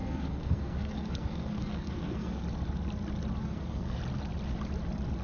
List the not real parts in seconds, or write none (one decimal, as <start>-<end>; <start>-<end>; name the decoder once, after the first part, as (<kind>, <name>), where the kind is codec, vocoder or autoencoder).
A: 0.0-2.4 (codec, SNAC); 3.4-4.0